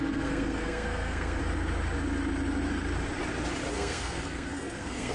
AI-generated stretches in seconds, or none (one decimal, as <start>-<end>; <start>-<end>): 0.0-1.4; 3.7-5.1